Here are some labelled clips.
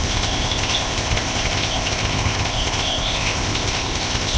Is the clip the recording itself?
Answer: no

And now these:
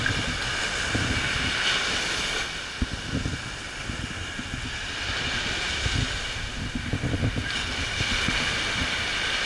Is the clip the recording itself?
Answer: yes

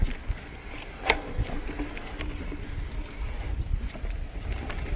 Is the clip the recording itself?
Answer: yes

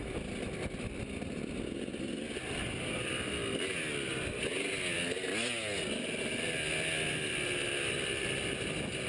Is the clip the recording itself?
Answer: yes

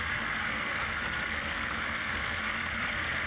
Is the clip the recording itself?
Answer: no